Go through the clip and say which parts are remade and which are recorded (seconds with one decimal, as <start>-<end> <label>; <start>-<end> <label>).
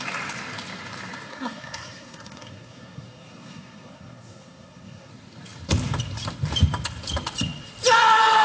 0.0-1.3 recorded; 1.3-5.1 remade; 5.1-8.4 recorded